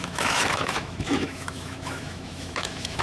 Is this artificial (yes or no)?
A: yes